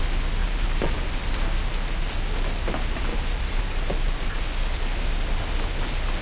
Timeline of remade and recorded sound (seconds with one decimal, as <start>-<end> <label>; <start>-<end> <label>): 0.0-0.4 recorded; 0.4-1.2 remade; 1.2-3.1 recorded; 3.1-4.4 remade; 4.4-6.2 recorded